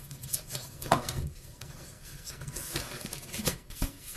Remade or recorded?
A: remade